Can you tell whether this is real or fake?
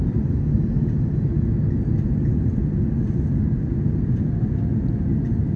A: real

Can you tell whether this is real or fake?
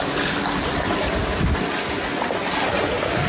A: real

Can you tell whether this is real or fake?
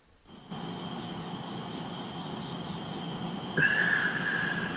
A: real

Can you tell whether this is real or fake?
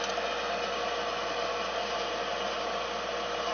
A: real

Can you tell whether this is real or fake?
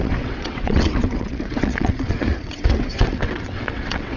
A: fake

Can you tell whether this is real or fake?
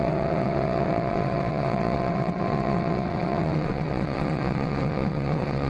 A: fake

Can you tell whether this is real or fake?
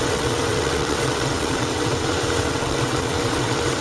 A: fake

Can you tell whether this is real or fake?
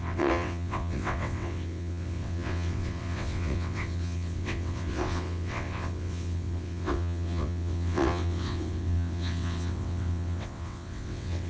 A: fake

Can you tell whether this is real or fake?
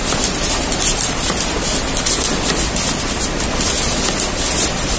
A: real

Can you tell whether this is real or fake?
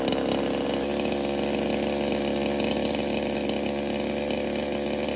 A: real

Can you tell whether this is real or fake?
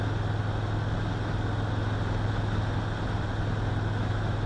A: real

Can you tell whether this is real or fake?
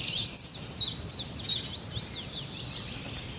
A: real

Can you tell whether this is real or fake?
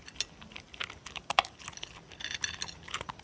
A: real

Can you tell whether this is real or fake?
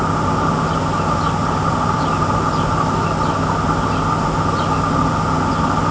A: real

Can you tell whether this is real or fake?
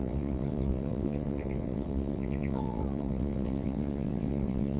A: fake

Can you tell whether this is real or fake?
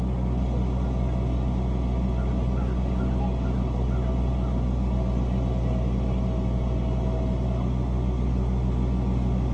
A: real